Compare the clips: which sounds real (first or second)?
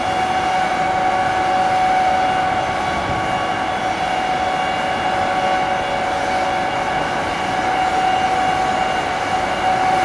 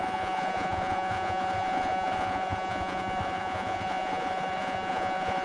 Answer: first